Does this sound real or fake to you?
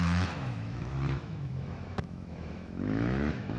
fake